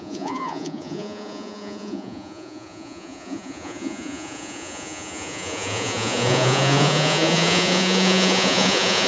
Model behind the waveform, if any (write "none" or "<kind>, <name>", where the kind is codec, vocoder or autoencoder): vocoder, Vocos